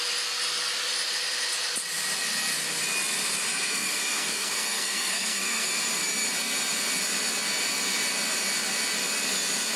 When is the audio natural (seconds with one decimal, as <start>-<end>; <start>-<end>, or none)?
0.0-3.5; 5.7-9.8